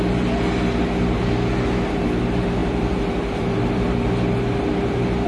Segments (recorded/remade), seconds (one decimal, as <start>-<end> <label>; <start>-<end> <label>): 0.0-2.6 recorded; 2.6-4.3 remade; 4.3-5.3 recorded